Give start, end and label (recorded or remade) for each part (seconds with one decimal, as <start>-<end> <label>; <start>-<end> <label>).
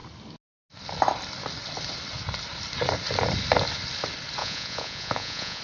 0.0-4.4 recorded; 4.4-5.6 remade